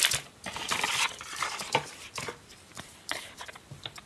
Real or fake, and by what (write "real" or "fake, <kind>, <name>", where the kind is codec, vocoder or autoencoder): fake, vocoder, BigVGAN v2